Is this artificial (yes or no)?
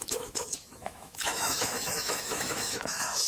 yes